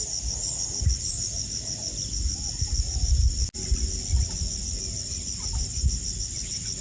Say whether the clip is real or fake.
real